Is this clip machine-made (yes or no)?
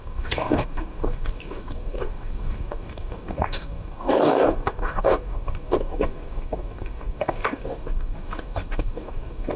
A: yes